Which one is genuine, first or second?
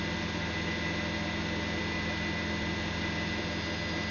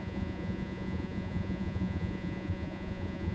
first